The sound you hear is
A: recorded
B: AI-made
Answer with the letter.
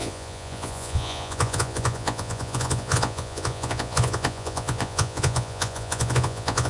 B